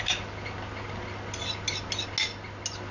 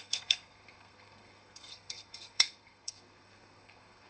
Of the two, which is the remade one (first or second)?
second